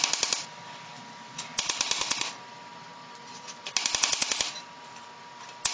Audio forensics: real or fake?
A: real